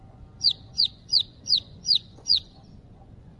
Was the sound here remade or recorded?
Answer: remade